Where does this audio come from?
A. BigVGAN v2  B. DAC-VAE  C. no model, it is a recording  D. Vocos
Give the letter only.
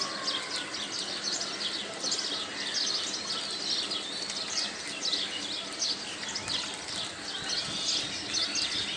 C